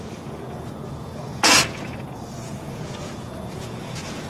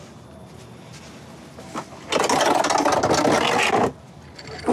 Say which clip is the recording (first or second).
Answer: second